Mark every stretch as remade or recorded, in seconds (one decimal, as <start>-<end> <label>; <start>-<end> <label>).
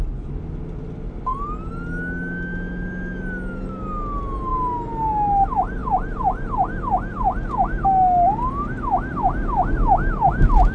0.0-10.7 recorded